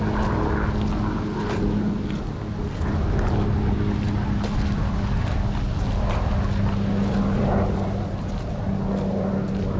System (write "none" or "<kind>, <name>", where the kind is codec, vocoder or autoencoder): none